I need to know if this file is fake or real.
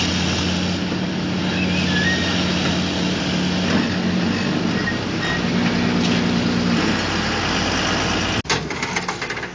real